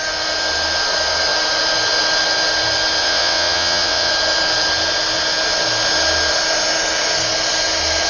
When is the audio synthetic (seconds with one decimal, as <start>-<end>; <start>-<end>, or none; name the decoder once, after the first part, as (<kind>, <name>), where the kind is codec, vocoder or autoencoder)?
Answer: 3.0-4.1 (vocoder, WaveNeXt)